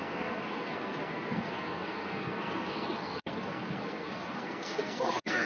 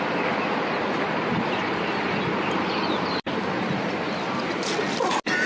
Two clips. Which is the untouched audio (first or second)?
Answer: second